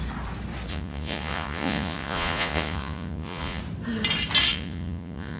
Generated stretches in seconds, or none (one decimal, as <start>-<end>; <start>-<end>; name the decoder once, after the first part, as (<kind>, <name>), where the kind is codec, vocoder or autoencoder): 0.7-3.6 (vocoder, Vocos); 4.5-5.4